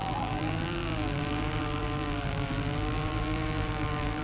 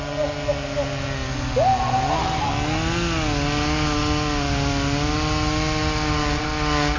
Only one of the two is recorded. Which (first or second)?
second